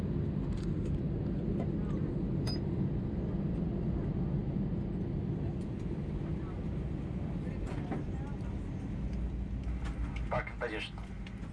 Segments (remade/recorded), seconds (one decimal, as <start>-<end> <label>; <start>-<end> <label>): 0.0-11.5 recorded